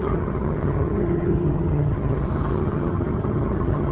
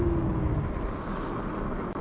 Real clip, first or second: second